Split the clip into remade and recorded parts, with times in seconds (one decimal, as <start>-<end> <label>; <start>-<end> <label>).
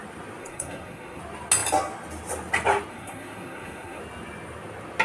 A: 0.0-0.4 recorded; 0.4-1.2 remade; 1.2-2.9 recorded; 2.9-4.0 remade; 4.0-5.0 recorded